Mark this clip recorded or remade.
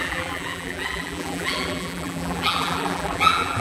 remade